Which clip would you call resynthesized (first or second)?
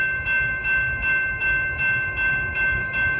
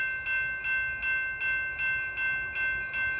first